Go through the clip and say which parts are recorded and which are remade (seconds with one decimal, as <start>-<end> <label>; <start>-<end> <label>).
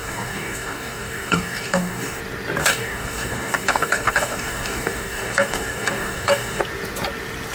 0.0-2.2 remade; 2.2-2.6 recorded; 2.6-6.6 remade; 6.6-7.5 recorded